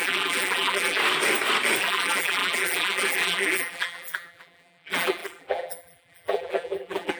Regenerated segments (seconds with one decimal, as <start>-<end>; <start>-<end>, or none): 0.0-1.0; 1.8-7.2